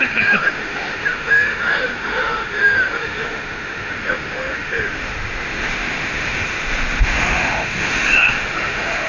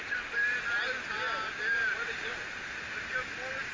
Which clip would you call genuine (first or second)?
second